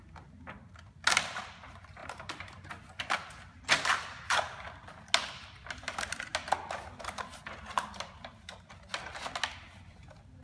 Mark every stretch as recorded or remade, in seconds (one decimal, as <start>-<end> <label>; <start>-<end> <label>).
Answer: 0.0-2.0 recorded; 2.0-2.7 remade; 2.7-10.4 recorded